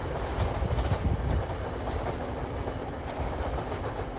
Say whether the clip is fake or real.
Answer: real